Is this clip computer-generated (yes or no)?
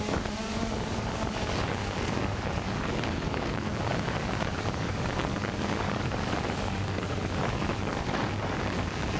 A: yes